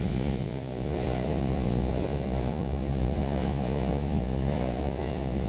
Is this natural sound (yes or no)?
no